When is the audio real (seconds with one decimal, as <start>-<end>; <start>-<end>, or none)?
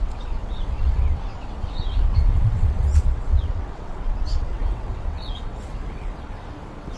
none